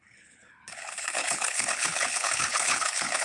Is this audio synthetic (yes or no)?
yes